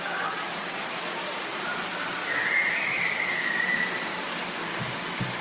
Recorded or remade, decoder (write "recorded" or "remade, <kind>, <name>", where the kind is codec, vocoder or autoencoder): remade, vocoder, BigVGAN v2